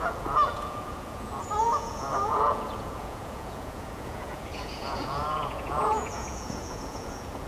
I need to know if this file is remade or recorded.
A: remade